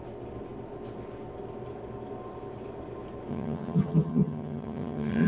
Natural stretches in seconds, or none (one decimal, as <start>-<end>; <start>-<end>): 0.0-3.3